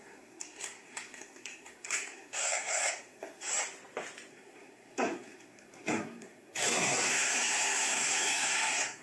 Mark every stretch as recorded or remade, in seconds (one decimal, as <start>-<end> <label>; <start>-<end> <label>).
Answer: 0.0-3.5 remade; 3.5-4.3 recorded; 4.3-9.0 remade